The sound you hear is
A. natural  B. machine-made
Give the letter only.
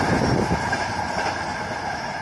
B